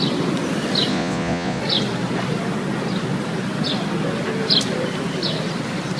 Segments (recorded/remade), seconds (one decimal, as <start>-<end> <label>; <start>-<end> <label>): 0.0-0.9 recorded; 0.9-1.6 remade; 1.6-6.0 recorded